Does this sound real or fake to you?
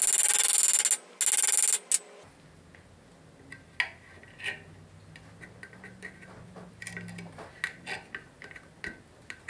real